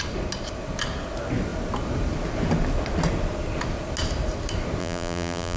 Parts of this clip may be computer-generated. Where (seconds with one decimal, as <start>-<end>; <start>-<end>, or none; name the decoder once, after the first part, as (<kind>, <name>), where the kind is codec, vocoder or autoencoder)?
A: 4.8-5.6 (vocoder, BigVGAN v2)